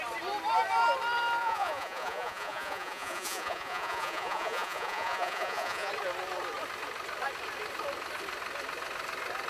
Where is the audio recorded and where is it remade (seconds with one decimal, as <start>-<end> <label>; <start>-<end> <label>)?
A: 0.0-1.4 recorded; 1.4-5.9 remade; 5.9-9.5 recorded